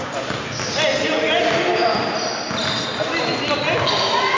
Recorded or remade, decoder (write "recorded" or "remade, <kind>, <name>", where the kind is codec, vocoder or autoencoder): recorded